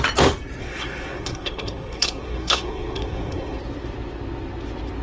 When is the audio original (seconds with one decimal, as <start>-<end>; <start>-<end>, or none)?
0.0-0.6; 3.6-5.0